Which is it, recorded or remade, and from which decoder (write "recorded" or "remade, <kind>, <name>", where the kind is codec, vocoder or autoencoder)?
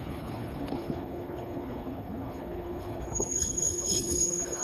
remade, codec, HILCodec